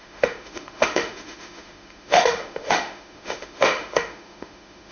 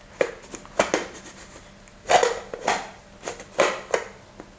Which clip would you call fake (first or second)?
first